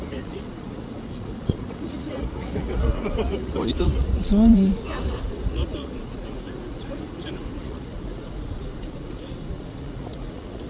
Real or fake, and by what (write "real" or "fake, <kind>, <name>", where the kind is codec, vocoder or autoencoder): fake, vocoder, Vocos